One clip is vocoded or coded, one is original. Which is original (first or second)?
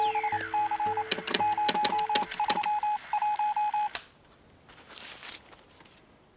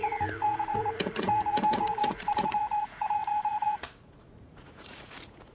first